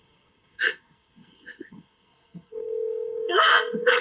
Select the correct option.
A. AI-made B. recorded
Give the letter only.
A